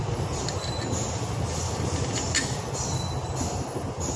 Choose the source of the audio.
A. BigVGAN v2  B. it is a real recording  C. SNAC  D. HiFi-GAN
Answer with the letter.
B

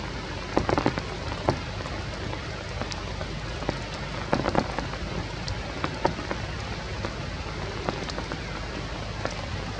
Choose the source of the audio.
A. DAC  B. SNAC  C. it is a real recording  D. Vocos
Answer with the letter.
C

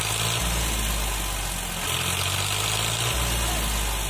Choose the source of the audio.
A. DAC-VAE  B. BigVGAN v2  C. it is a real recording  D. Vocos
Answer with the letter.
C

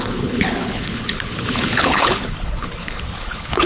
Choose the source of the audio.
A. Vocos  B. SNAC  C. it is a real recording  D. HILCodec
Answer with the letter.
D